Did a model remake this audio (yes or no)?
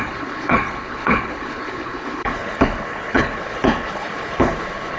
yes